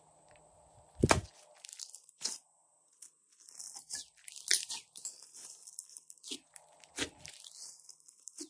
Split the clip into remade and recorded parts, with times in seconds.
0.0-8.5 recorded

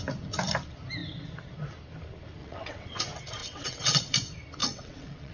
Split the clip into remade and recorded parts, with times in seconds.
0.0-2.4 recorded; 2.4-3.0 remade; 3.0-3.4 recorded; 3.4-4.0 remade; 4.0-4.6 recorded; 4.6-5.3 remade

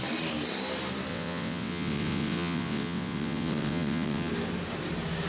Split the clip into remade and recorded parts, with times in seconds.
0.0-1.1 recorded; 1.1-4.3 remade; 4.3-5.3 recorded

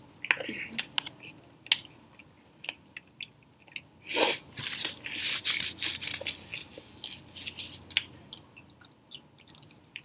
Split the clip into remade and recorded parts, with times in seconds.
0.0-10.0 recorded

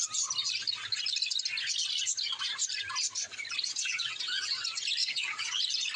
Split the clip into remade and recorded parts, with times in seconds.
0.0-3.7 recorded; 3.7-4.5 remade; 4.5-5.0 recorded; 5.0-5.6 remade; 5.6-6.0 recorded

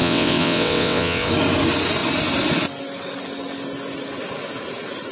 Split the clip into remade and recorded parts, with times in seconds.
0.0-1.3 remade; 1.3-5.1 recorded

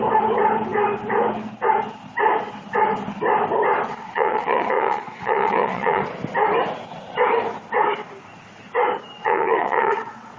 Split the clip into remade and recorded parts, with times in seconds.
0.0-3.9 recorded; 3.9-6.0 remade; 6.0-9.2 recorded; 9.2-10.4 remade